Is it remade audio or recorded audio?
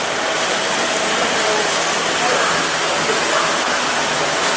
recorded